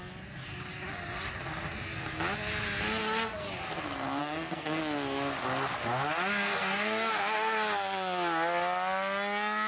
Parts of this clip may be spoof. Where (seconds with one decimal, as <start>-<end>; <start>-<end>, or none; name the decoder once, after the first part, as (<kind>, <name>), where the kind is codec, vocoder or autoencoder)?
3.0-3.5 (codec, SNAC); 4.2-4.8; 6.5-7.1